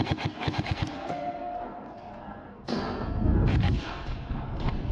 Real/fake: fake